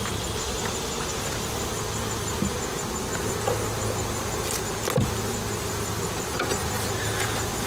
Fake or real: real